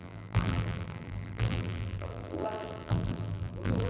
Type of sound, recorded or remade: remade